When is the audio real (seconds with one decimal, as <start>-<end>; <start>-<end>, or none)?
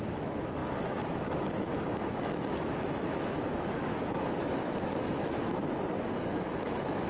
5.6-6.2